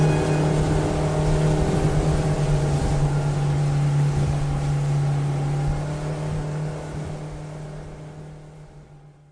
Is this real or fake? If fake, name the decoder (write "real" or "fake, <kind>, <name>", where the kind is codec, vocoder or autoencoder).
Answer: real